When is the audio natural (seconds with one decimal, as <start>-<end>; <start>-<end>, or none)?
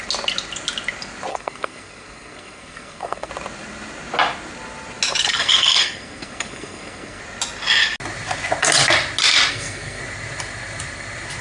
0.0-1.3; 3.3-5.2; 7.2-9.5; 10.0-11.4